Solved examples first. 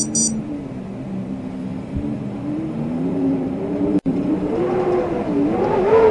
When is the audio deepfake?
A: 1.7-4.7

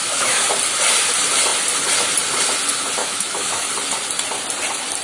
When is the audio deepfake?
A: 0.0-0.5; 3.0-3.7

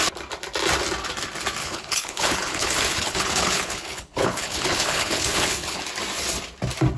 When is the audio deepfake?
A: 1.6-5.8

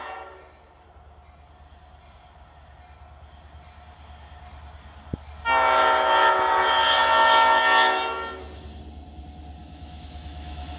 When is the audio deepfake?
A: 9.6-10.8

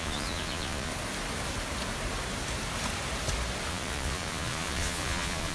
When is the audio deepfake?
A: 0.0-0.9; 3.7-5.5

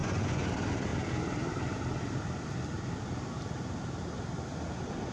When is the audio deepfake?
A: 0.0-0.5